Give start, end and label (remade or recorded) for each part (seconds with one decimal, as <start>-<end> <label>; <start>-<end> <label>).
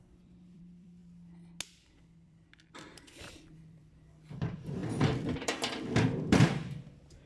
0.0-1.0 remade; 1.0-1.7 recorded; 1.7-7.3 remade